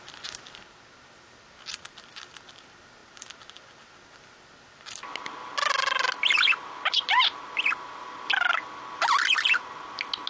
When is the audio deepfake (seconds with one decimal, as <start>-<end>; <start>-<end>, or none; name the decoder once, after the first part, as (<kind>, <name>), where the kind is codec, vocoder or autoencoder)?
none